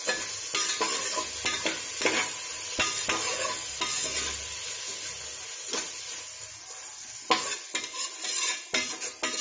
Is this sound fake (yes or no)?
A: no